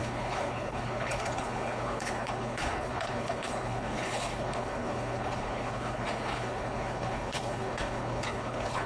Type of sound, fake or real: fake